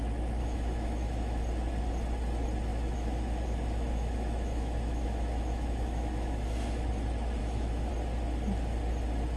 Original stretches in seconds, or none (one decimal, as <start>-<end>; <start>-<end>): 0.0-0.4; 1.4-2.7; 6.9-7.4; 7.9-9.4